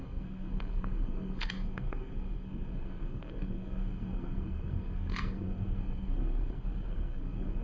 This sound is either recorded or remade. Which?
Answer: remade